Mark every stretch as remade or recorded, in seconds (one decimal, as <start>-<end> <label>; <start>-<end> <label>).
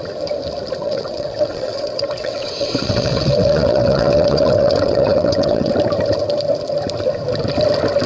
0.0-0.8 recorded; 0.8-5.7 remade; 5.7-8.1 recorded